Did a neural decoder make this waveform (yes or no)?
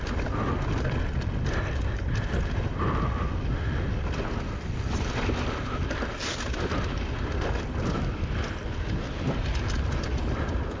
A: no